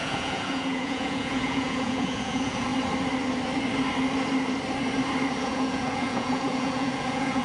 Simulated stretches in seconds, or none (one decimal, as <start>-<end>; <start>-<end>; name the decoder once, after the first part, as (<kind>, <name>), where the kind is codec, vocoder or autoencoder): 0.0-2.7 (vocoder, Vocos); 5.4-7.4